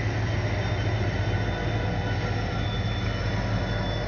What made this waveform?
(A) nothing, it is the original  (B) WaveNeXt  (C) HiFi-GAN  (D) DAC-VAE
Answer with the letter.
A